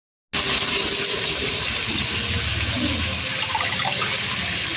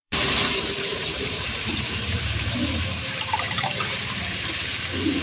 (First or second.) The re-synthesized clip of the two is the second